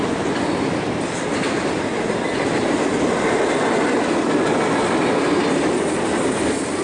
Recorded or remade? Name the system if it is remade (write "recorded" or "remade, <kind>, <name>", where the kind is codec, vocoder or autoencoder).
recorded